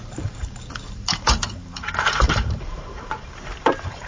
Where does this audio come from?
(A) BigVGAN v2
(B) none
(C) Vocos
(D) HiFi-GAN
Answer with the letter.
A